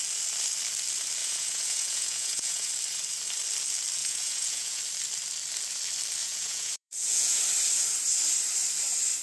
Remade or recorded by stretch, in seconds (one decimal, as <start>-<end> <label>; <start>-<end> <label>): 0.0-1.2 recorded; 1.2-2.7 remade; 2.7-4.0 recorded; 4.0-4.8 remade; 4.8-6.2 recorded; 6.2-7.4 remade; 7.4-9.2 recorded